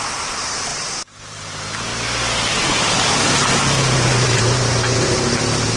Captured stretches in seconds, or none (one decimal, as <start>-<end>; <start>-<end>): 0.7-1.2; 1.9-2.6